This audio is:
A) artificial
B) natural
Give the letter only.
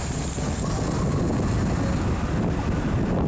B